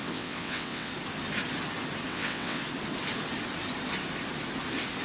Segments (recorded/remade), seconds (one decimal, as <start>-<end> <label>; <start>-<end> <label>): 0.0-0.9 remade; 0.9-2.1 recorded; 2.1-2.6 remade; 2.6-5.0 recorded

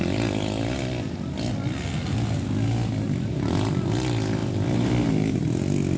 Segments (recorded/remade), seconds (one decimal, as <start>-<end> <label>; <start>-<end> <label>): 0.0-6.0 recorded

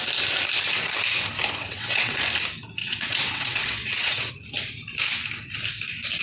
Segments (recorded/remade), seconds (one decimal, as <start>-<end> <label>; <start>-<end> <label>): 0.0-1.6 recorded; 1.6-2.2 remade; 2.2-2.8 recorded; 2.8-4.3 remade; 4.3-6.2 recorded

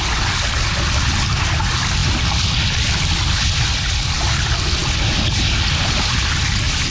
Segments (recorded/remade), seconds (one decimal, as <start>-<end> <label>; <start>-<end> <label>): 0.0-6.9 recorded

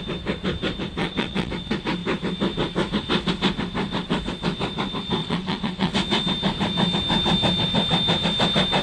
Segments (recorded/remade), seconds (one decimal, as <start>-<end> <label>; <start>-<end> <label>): 0.0-1.0 recorded; 1.0-1.5 remade; 1.5-5.2 recorded; 5.2-5.9 remade; 5.9-8.8 recorded

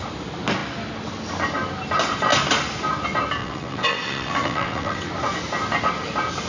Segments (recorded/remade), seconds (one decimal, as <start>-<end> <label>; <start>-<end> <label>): 0.0-3.4 recorded; 3.4-5.1 remade; 5.1-6.5 recorded

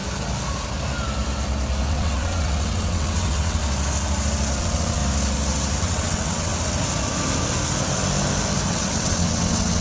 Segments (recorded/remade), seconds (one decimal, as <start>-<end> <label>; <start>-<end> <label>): 0.0-1.9 recorded; 1.9-3.6 remade; 3.6-4.6 recorded; 4.6-5.0 remade; 5.0-5.8 recorded; 5.8-6.5 remade; 6.5-8.7 recorded; 8.7-9.8 remade